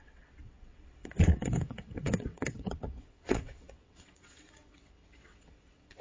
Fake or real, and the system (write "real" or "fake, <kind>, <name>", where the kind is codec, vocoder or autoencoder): fake, vocoder, WaveNeXt